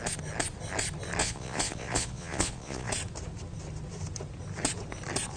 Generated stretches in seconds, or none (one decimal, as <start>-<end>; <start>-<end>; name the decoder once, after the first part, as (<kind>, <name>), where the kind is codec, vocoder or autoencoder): 1.2-2.9 (vocoder, Vocos)